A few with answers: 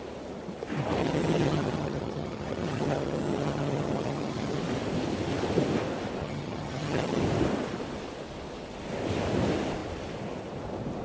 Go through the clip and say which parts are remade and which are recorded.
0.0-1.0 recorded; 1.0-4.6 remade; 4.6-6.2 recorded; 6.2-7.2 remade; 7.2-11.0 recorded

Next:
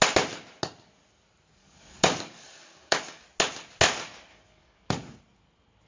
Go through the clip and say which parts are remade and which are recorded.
0.0-1.6 recorded; 1.6-3.2 remade; 3.2-4.3 recorded; 4.3-5.2 remade; 5.2-5.9 recorded